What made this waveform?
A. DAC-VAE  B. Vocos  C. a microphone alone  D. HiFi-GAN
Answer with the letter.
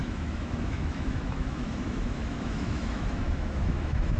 A